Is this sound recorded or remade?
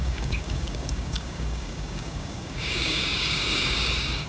remade